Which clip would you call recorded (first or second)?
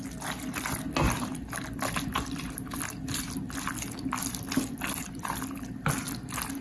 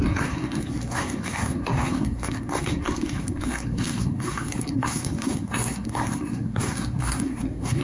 first